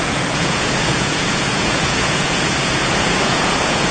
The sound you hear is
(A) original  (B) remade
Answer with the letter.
B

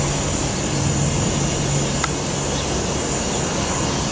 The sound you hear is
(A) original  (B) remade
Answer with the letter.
A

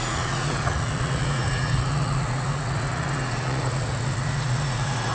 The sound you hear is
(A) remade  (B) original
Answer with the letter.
A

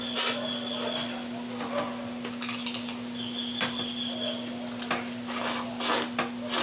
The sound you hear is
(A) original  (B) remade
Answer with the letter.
A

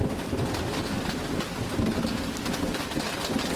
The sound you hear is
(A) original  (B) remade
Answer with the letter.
A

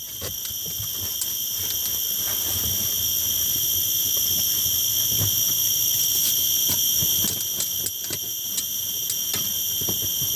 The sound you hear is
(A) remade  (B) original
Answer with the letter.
B